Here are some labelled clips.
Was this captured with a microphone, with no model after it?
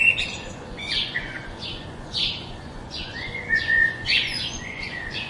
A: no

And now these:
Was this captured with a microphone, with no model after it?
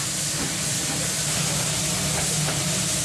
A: yes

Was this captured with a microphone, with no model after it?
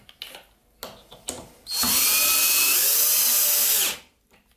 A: yes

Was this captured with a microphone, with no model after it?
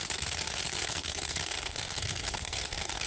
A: no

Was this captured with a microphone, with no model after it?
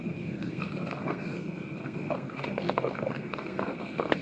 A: no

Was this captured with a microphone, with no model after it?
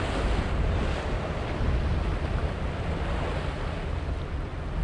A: yes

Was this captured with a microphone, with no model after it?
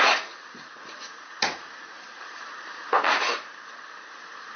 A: no